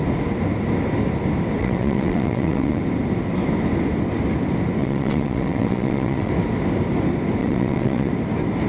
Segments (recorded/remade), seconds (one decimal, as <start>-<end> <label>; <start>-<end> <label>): 0.0-1.6 recorded; 1.6-2.8 remade; 2.8-4.8 recorded; 4.8-6.3 remade; 6.3-7.4 recorded; 7.4-8.1 remade; 8.1-8.7 recorded